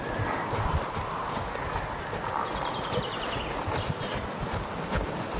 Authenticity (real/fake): real